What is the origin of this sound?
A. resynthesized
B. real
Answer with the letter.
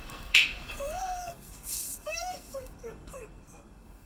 A